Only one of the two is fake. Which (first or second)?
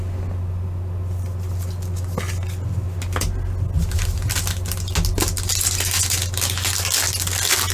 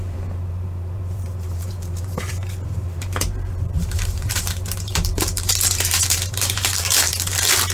second